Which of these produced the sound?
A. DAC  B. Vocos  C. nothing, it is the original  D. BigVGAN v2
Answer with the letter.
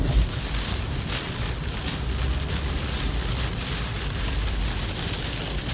C